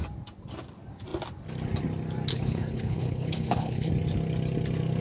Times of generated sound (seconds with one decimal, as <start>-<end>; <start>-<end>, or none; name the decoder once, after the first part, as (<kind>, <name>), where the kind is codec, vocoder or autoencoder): 2.3-3.9 (codec, HILCodec)